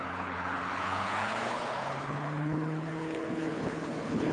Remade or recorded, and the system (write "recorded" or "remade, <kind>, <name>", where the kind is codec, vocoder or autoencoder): remade, codec, HILCodec